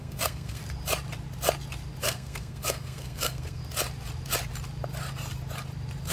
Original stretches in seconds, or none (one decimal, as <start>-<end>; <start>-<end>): 0.6-2.0; 3.6-6.1